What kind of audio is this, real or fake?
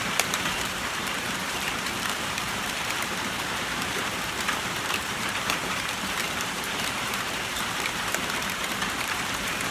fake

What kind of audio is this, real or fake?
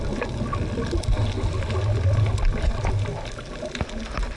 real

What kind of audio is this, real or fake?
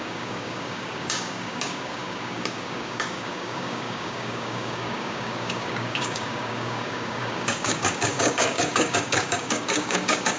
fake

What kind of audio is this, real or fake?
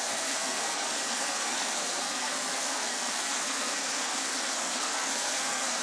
fake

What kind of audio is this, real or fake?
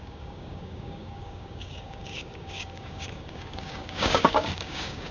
fake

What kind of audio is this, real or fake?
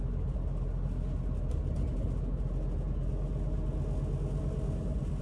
real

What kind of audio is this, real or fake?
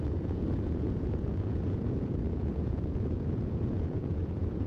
fake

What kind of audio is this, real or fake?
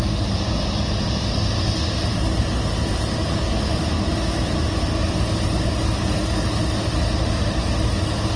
real